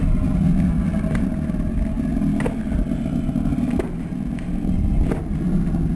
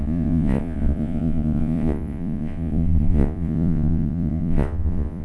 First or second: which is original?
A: first